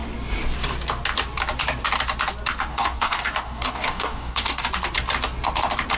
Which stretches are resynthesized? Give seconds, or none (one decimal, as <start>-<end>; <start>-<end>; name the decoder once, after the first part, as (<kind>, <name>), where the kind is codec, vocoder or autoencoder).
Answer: 2.7-4.6 (codec, DAC)